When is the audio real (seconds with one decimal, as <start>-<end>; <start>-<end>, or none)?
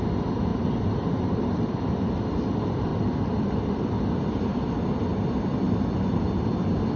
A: 0.0-0.5; 2.1-2.9; 3.9-7.0